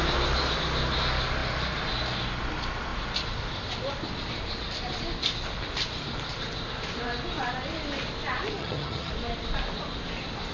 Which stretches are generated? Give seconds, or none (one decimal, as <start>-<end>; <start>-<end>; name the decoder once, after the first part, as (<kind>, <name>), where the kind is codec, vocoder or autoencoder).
8.6-9.1 (vocoder, HiFi-GAN)

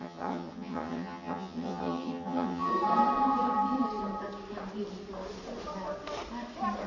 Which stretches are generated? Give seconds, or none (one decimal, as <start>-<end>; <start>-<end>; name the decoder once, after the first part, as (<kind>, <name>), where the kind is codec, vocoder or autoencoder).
0.0-2.7 (vocoder, HiFi-GAN)

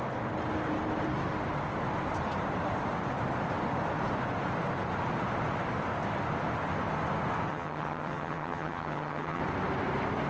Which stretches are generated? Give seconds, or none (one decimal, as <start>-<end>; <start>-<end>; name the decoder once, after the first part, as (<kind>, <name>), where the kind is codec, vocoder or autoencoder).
7.5-9.4 (vocoder, HiFi-GAN)